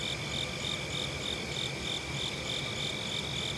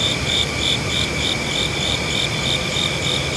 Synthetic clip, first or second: second